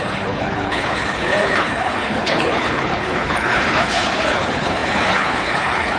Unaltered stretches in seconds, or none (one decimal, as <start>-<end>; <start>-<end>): none